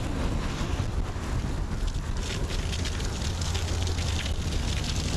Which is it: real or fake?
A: real